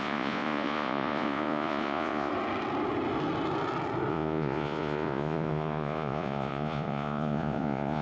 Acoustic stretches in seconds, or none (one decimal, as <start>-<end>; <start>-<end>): 2.3-4.1